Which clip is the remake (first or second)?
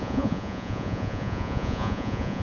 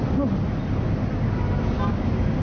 first